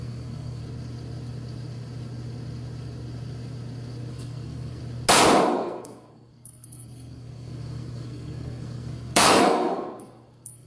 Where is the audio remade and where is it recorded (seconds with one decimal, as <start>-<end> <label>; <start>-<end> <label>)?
0.0-0.6 remade; 0.6-4.1 recorded; 4.1-4.8 remade; 4.8-5.5 recorded; 5.5-10.7 remade